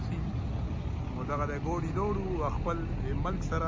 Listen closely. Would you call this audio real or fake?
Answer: real